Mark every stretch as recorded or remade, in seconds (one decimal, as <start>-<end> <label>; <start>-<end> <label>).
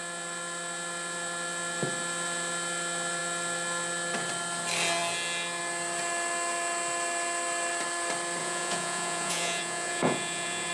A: 0.0-8.4 recorded; 8.4-10.7 remade